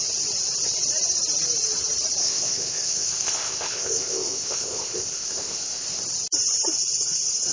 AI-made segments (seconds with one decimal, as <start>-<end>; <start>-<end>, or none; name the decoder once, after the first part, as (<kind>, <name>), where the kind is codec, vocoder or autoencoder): 2.2-6.0 (codec, ZipCodec)